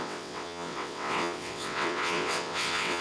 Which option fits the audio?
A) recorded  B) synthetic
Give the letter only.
B